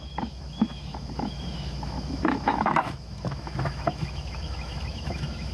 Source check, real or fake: fake